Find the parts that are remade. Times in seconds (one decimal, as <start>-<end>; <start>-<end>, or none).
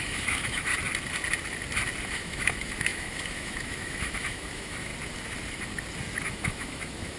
0.0-0.7; 2.1-4.9; 6.3-7.2